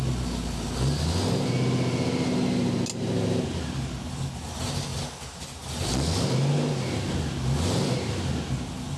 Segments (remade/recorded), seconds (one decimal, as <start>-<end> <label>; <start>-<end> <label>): 0.0-9.0 recorded